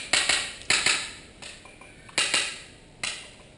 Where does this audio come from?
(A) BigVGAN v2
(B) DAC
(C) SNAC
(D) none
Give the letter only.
D